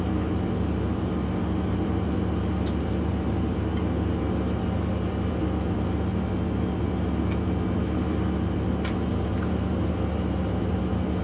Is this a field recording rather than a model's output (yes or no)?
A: yes